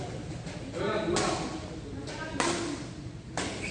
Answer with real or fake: real